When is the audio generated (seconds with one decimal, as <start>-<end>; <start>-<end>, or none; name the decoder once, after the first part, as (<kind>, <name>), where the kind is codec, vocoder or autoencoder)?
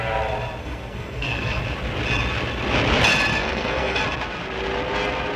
0.6-1.6 (codec, SNAC); 3.3-4.0